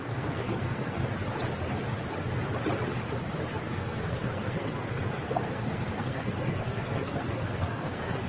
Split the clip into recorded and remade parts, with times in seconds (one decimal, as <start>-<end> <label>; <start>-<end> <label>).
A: 0.0-1.0 remade; 1.0-3.6 recorded; 3.6-8.3 remade